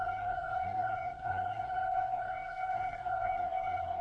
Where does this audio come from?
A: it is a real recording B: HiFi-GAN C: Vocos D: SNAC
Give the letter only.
D